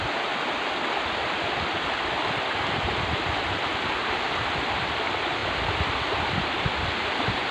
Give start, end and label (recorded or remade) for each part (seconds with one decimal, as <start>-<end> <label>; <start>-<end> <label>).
0.0-4.0 recorded; 4.0-4.8 remade; 4.8-5.4 recorded; 5.4-7.5 remade